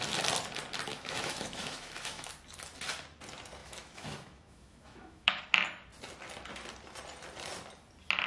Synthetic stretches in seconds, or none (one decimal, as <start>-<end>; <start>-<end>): 0.9-2.3; 3.6-5.4